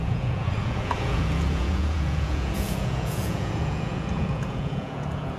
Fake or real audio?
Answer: fake